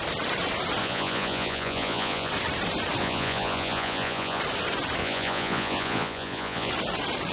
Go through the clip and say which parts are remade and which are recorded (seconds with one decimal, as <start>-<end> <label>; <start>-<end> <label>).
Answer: 0.0-0.8 recorded; 0.8-2.3 remade; 2.3-3.0 recorded; 3.0-4.4 remade; 4.4-5.0 recorded; 5.0-6.7 remade; 6.7-7.3 recorded